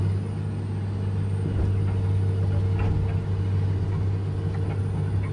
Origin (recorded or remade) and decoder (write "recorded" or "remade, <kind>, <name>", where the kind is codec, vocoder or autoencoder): recorded